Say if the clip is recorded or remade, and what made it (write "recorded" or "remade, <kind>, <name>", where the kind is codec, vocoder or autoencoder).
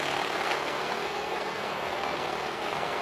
remade, codec, SNAC